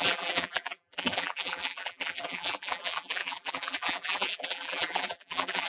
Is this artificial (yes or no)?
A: yes